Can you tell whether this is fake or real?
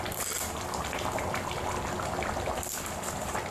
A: real